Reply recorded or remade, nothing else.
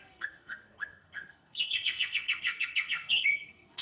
remade